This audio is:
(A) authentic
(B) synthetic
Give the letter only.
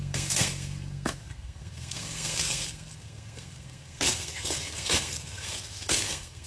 B